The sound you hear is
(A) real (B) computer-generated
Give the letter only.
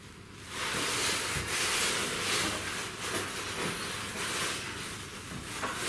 A